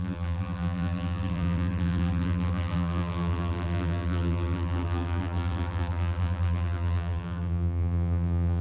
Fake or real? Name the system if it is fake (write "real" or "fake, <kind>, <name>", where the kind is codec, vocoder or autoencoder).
fake, vocoder, BigVGAN v2